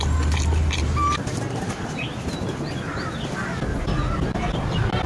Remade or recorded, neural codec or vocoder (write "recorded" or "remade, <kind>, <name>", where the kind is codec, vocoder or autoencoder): recorded